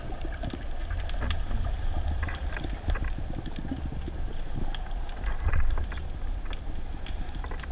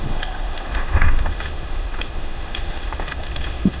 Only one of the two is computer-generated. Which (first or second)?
second